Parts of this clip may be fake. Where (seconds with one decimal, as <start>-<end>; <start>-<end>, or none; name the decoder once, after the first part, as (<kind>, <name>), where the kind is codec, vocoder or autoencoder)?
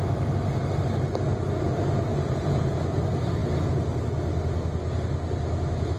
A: 2.1-2.8 (vocoder, Vocos)